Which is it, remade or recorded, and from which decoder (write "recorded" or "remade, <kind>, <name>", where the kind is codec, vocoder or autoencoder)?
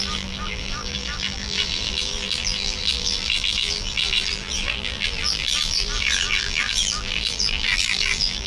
remade, vocoder, BigVGAN v2